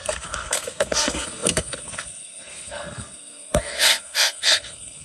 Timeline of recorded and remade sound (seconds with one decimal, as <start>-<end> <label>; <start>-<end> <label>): 0.0-5.0 remade